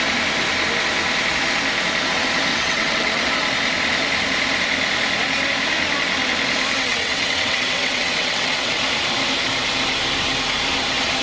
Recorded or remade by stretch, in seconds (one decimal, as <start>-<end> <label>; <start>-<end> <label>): 0.0-2.5 recorded; 2.5-3.3 remade; 3.3-6.8 recorded; 6.8-8.8 remade; 8.8-11.2 recorded